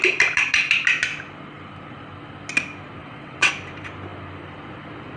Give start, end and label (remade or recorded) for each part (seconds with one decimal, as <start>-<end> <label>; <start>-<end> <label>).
0.0-3.0 recorded; 3.0-3.5 remade; 3.5-5.2 recorded